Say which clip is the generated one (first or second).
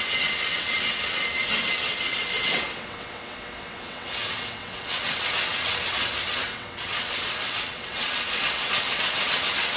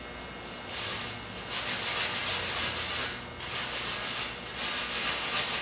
first